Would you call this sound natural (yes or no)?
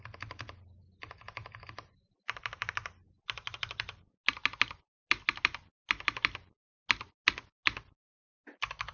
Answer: yes